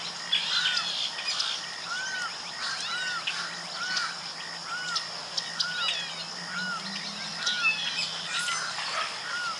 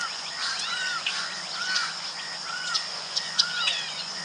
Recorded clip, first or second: first